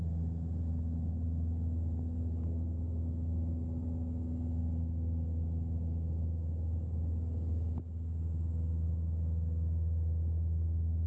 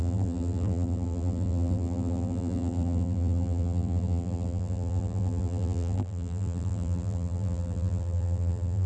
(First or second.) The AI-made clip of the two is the second